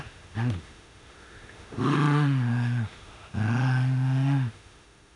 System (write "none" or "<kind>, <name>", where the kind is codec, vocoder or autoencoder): autoencoder, DAC-VAE